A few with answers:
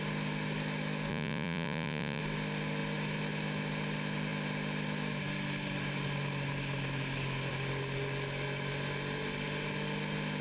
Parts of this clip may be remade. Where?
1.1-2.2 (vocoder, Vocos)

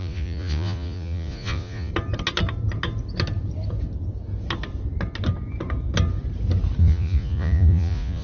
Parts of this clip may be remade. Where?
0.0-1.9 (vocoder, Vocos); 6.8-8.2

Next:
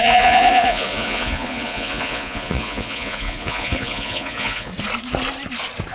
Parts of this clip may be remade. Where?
0.0-4.7 (vocoder, Vocos)